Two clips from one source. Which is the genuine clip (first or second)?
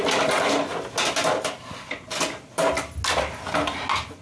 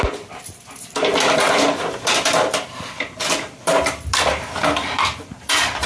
first